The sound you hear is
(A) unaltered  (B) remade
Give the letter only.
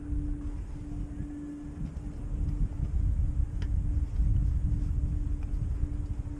A